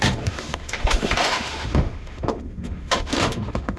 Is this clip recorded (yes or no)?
no